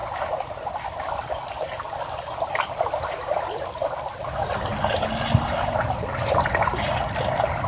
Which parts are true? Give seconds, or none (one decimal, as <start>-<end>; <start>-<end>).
0.0-4.7; 7.2-7.7

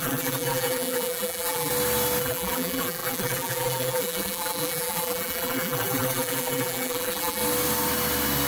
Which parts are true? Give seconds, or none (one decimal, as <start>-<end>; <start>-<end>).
1.7-2.2; 7.4-8.5

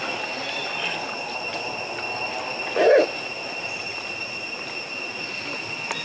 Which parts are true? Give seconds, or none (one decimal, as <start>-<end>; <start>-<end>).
0.0-6.0

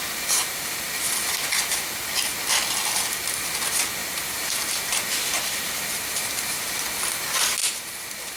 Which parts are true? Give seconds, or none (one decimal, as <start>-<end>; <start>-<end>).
0.0-0.4; 0.9-4.0; 6.8-7.6

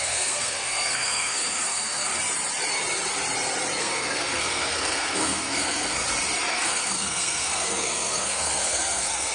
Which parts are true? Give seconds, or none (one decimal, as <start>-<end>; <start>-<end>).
2.1-3.8; 6.0-6.5

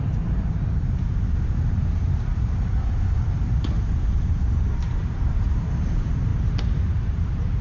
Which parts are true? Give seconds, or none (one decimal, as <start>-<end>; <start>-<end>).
6.3-6.9